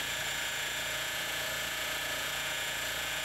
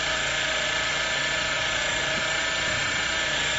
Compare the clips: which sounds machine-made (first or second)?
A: first